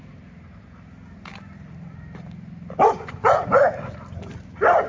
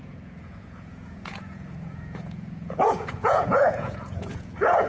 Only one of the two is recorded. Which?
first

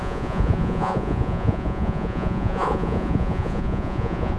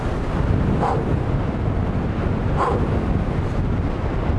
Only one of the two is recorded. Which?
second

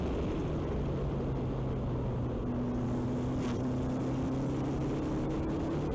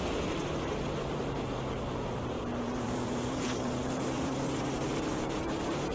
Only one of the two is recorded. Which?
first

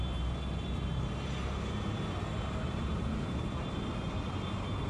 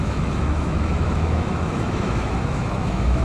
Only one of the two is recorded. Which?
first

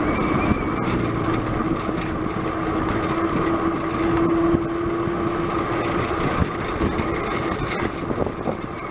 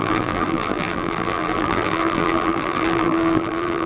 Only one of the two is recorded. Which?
first